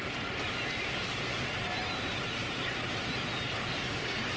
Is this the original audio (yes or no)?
yes